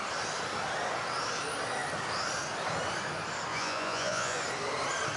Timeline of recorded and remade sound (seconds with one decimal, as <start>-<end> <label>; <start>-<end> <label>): 0.0-3.5 recorded; 3.5-4.4 remade; 4.4-5.2 recorded